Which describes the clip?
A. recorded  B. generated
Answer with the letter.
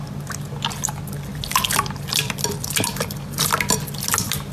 A